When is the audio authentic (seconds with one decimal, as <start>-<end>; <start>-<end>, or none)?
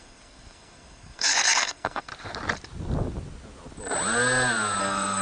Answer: 2.1-4.8